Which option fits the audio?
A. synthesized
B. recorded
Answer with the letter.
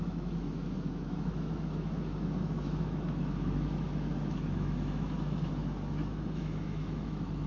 A